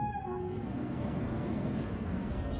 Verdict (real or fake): fake